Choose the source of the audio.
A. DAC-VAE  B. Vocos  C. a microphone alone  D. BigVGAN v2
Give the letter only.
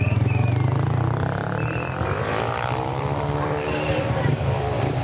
D